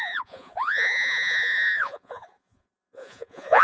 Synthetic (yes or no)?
yes